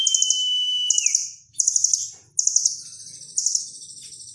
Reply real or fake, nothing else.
real